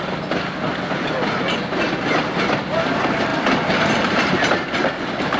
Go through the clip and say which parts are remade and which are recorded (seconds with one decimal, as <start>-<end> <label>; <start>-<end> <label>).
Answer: 0.0-5.4 recorded